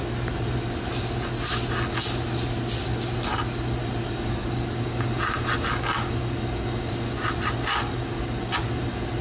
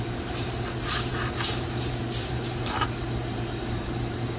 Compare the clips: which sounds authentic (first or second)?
first